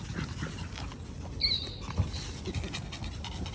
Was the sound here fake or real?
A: real